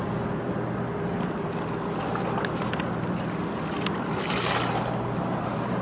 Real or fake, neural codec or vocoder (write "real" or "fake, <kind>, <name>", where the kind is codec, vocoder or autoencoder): real